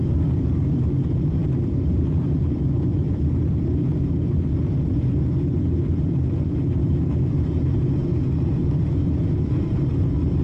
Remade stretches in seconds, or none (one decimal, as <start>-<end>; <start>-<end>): none